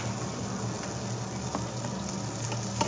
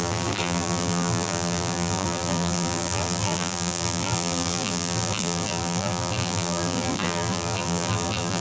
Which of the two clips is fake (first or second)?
second